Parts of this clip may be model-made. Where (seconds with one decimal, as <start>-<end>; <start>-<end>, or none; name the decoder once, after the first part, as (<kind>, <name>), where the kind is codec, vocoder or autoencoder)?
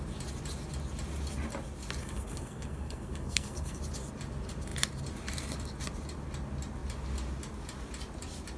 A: 2.0-3.8 (codec, SNAC)